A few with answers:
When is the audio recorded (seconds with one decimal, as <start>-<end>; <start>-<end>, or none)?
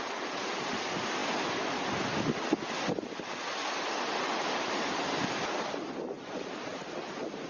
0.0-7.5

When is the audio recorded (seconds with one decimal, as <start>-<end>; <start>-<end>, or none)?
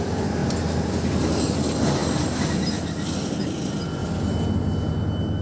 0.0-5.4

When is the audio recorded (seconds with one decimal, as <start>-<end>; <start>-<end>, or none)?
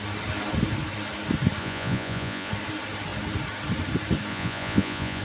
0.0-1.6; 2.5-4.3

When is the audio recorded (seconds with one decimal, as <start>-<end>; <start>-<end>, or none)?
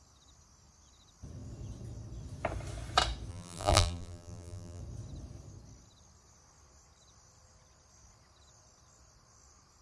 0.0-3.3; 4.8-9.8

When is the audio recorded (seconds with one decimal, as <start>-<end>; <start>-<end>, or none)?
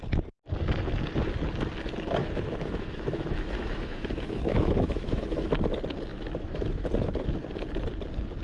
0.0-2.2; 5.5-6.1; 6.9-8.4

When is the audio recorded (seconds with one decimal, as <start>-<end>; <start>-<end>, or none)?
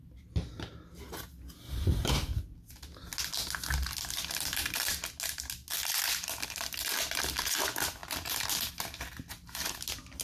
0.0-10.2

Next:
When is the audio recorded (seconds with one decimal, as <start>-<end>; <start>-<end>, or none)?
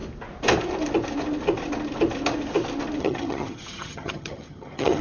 0.0-3.0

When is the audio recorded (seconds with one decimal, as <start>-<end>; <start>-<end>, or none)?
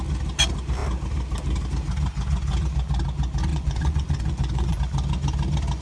0.0-3.5; 4.8-5.8